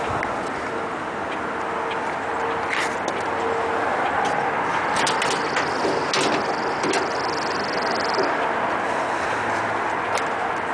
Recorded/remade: recorded